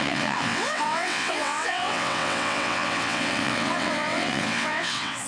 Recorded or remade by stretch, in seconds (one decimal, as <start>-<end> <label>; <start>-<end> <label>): 0.0-5.3 remade